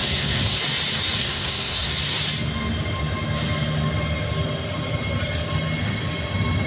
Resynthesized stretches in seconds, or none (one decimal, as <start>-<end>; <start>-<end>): 0.0-0.6; 1.2-1.9